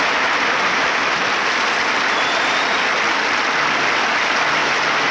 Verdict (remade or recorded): recorded